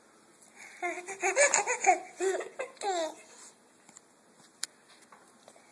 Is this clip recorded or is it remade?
recorded